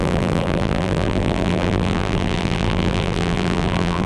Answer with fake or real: fake